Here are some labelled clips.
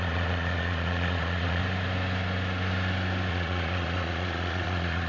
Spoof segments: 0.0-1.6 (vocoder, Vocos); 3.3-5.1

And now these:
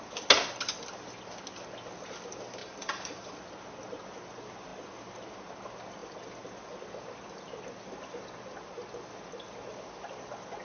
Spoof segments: 2.6-3.3 (vocoder, BigVGAN v2)

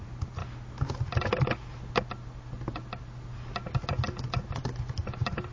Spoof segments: none